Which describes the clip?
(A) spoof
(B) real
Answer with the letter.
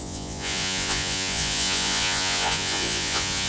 A